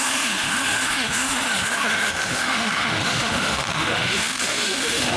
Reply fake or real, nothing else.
fake